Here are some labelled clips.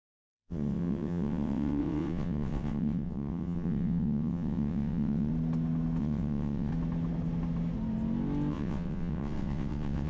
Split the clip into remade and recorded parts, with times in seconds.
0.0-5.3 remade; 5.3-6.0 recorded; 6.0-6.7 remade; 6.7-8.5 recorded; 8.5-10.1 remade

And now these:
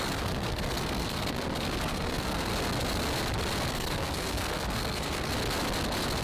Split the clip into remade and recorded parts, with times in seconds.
0.0-2.5 remade; 2.5-3.7 recorded; 3.7-5.3 remade; 5.3-6.2 recorded

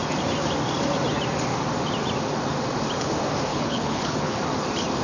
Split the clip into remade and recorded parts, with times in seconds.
0.0-3.5 recorded; 3.5-4.4 remade; 4.4-5.0 recorded

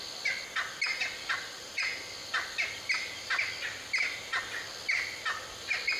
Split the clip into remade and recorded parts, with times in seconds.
0.0-1.0 recorded; 1.0-1.5 remade; 1.5-2.2 recorded; 2.2-3.4 remade; 3.4-6.0 recorded

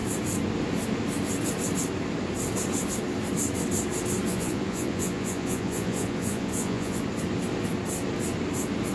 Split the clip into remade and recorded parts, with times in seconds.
0.0-4.3 recorded; 4.3-7.0 remade; 7.0-8.9 recorded

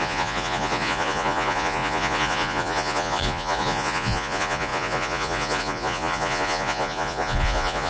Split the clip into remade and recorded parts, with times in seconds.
0.0-7.9 remade

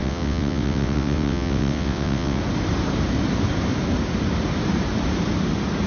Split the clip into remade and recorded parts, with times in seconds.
0.0-2.4 remade; 2.4-5.9 recorded